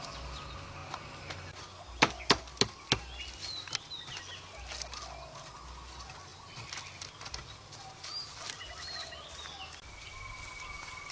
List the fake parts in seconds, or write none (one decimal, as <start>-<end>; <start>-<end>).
none